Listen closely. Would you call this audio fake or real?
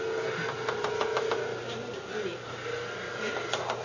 real